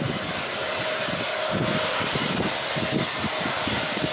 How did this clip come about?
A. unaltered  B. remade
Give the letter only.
A